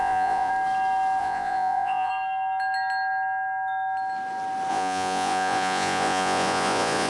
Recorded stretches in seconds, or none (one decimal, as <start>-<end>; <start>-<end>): 0.5-1.2; 2.1-4.7